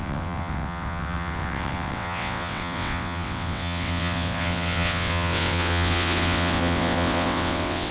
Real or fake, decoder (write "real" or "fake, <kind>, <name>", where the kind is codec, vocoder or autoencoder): fake, vocoder, WaveNeXt